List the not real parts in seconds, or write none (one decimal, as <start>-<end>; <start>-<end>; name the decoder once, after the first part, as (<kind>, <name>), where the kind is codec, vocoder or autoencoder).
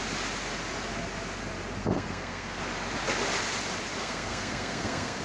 1.8-2.6 (codec, SNAC); 4.0-5.2